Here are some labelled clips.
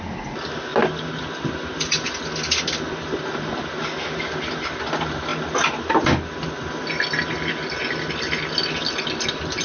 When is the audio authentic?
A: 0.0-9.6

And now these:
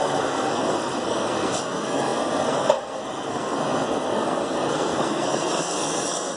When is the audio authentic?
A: none

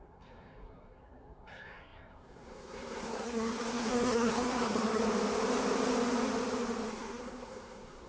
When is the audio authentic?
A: 5.0-6.9

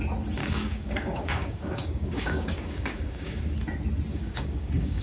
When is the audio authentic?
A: 0.0-0.4; 3.4-4.1

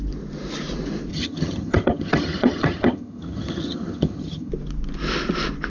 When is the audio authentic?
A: 0.0-1.1; 4.5-5.7

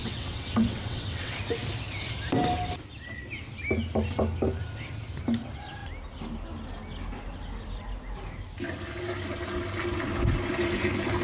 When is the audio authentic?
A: 1.4-11.2

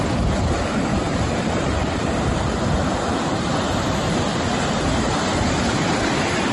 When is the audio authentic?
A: 0.0-0.9; 4.8-5.3; 6.0-6.5